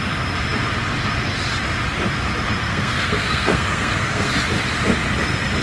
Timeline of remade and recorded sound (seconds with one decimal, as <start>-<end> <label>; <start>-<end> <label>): 0.0-2.6 recorded; 2.6-4.3 remade; 4.3-5.6 recorded